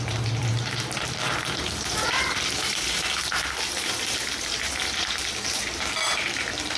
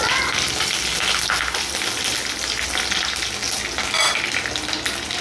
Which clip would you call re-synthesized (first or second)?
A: first